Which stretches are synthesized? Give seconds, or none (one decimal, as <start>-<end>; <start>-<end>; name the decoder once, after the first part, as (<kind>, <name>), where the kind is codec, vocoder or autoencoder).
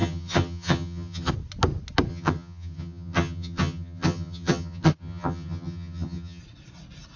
0.0-1.3 (vocoder, HiFi-GAN); 2.1-6.4